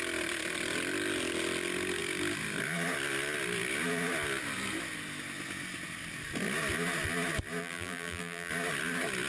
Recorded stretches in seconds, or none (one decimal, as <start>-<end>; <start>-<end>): 0.0-7.6; 8.5-9.3